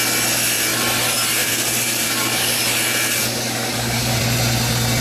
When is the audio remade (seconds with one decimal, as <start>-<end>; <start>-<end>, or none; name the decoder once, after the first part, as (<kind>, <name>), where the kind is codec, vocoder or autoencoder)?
1.4-2.6 (codec, DAC); 3.2-4.2